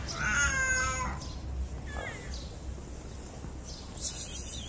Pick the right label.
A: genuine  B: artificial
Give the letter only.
A